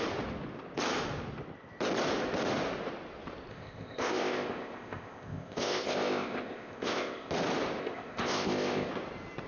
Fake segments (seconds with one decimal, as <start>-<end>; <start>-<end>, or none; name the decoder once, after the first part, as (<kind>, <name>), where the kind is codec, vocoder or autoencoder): 3.5-7.3 (codec, ZipCodec); 7.8-8.9